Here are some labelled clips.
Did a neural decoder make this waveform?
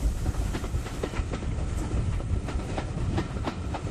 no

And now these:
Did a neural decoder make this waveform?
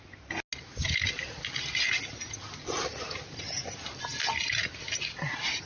no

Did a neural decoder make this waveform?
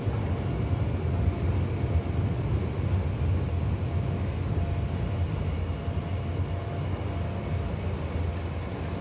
no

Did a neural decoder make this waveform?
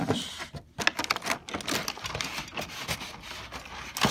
no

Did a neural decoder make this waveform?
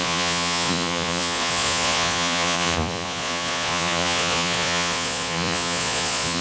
yes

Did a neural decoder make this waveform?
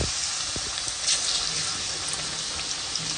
no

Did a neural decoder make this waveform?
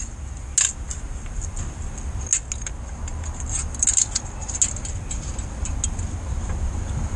no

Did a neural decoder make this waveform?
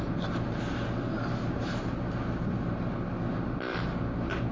no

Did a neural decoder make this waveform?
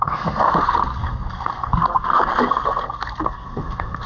yes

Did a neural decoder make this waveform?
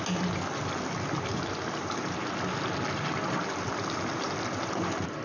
no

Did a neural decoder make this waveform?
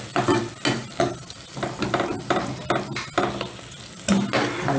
no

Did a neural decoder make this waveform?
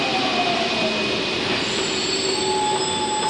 no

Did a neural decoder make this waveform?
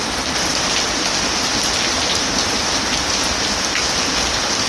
no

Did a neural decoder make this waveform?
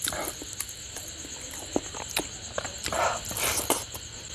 no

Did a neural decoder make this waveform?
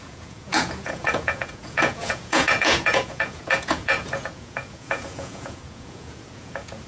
yes